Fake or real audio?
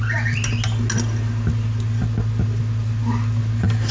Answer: real